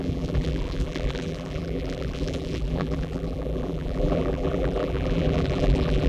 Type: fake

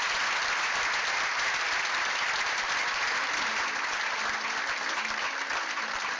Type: real